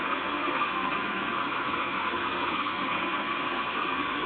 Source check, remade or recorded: remade